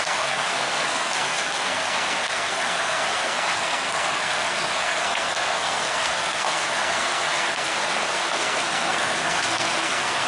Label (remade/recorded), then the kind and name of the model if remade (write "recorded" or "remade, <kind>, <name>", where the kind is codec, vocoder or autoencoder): remade, codec, SNAC